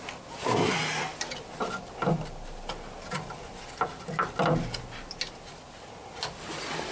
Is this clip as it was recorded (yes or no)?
yes